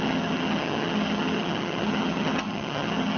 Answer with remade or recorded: remade